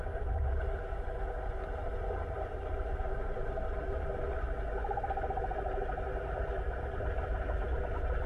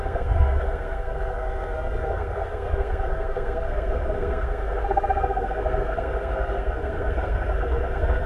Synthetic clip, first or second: second